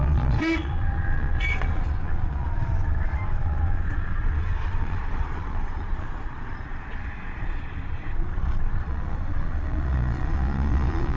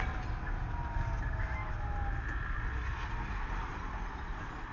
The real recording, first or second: second